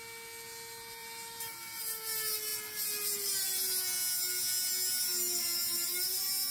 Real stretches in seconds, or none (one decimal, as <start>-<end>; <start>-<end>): 0.0-1.0; 1.8-6.5